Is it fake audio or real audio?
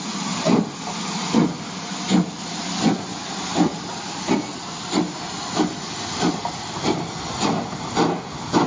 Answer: real